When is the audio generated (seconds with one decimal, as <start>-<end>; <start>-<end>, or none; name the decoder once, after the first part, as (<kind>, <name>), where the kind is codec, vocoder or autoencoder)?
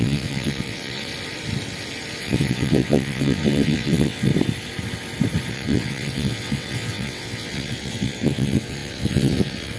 0.0-1.1 (vocoder, WaveNeXt); 2.2-4.3; 5.5-9.8